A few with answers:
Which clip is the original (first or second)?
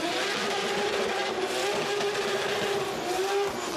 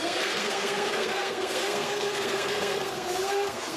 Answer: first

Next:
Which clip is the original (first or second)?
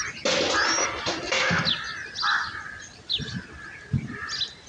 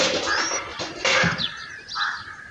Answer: first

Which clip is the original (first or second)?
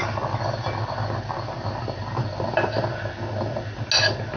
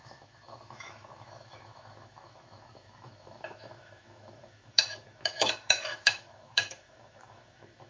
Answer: first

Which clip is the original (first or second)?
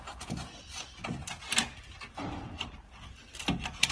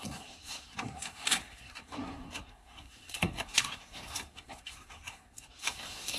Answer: first